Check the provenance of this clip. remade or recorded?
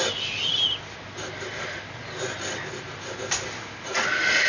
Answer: recorded